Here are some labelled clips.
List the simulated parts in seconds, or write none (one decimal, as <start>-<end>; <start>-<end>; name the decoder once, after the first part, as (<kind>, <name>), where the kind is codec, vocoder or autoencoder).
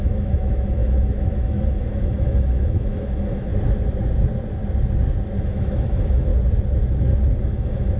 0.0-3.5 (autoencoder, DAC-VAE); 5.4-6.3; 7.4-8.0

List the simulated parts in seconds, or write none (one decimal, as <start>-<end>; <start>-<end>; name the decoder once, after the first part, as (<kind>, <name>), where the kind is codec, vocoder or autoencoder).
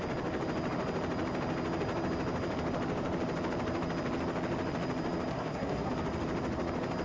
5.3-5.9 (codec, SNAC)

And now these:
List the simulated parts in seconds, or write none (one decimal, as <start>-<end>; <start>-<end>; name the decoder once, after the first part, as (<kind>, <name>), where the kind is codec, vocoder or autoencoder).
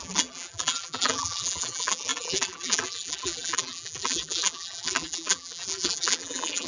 0.0-6.7 (vocoder, BigVGAN v2)